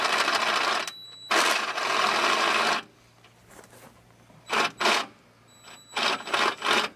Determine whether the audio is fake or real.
real